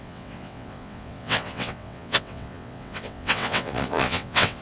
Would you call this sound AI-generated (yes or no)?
yes